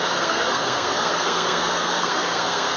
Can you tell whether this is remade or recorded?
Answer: remade